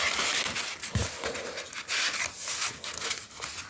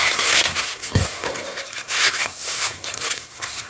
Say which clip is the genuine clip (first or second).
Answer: first